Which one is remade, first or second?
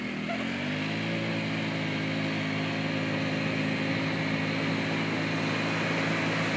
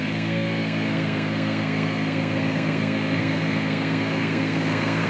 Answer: second